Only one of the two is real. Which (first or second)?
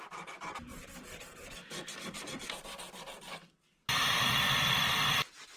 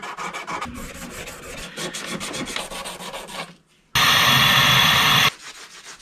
second